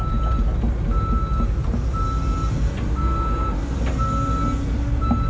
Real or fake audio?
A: real